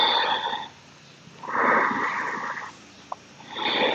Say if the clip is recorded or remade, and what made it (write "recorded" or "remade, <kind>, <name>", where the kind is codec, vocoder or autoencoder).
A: recorded